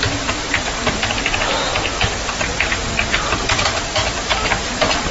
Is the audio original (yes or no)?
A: no